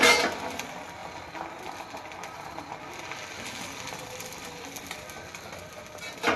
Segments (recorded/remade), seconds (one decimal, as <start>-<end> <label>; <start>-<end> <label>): 0.0-6.4 recorded